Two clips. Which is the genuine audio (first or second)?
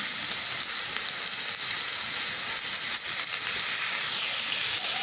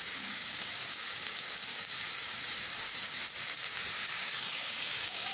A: first